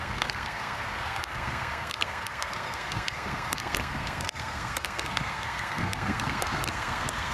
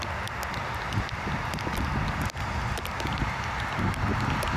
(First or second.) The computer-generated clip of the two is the first